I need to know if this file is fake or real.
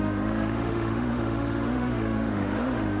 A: fake